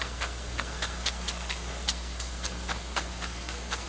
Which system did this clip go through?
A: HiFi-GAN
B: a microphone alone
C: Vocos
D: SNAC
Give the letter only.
D